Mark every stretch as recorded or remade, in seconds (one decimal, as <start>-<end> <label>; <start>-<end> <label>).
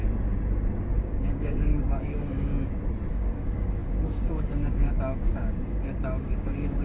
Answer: 0.0-1.0 recorded; 1.0-2.5 remade; 2.5-3.1 recorded; 3.1-6.8 remade